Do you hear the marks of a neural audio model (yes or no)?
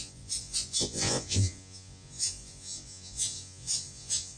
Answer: yes